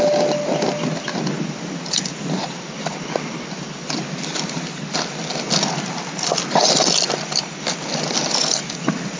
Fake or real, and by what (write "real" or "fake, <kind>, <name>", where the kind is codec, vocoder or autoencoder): real